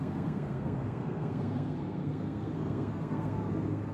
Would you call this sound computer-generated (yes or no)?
yes